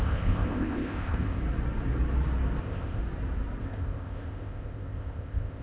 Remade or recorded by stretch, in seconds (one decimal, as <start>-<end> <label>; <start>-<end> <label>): 0.0-1.4 remade; 1.4-2.6 recorded; 2.6-3.0 remade; 3.0-3.6 recorded; 3.6-5.6 remade